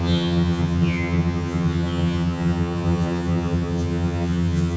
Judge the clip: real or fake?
fake